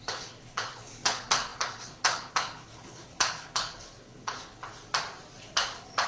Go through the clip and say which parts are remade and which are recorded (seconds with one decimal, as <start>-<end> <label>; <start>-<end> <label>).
0.0-4.6 remade; 4.6-5.4 recorded; 5.4-6.1 remade